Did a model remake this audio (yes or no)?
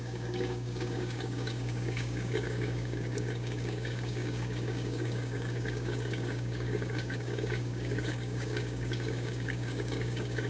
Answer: yes